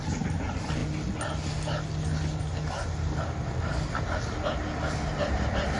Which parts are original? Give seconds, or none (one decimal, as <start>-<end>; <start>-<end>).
0.0-5.8